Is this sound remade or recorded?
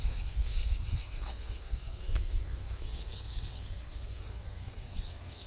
remade